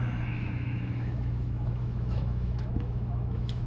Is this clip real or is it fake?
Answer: fake